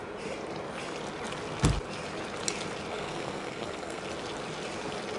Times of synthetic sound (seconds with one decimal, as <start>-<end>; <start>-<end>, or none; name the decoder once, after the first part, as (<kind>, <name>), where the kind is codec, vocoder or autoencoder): 2.9-4.0 (codec, SNAC)